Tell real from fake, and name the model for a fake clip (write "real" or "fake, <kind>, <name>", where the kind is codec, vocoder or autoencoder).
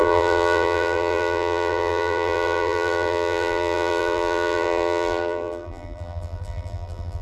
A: fake, vocoder, BigVGAN v2